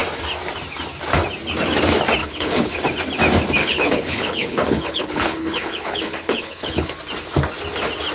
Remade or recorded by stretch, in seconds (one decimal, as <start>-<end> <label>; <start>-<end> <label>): 0.0-2.2 recorded; 2.2-2.8 remade; 2.8-3.6 recorded; 3.6-6.9 remade; 6.9-8.1 recorded